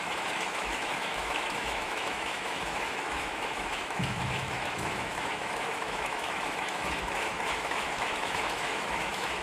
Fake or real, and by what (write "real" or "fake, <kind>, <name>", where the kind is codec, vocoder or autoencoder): fake, autoencoder, DAC-VAE